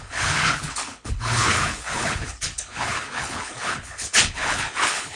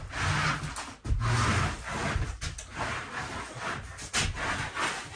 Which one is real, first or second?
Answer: second